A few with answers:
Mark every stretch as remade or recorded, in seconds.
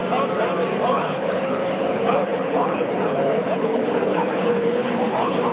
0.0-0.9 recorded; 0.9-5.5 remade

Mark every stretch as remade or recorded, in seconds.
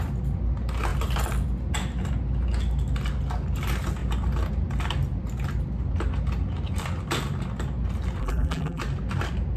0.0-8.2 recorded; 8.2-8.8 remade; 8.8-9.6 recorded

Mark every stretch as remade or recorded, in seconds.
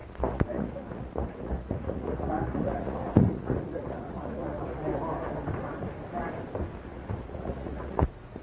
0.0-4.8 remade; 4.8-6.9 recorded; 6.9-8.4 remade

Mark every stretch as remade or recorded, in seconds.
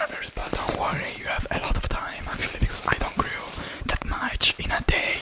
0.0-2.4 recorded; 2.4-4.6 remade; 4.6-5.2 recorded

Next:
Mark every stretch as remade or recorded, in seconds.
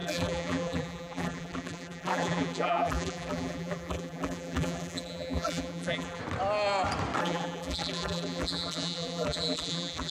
0.0-6.2 remade; 6.2-7.2 recorded; 7.2-10.1 remade